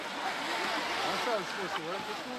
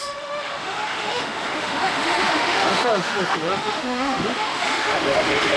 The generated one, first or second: second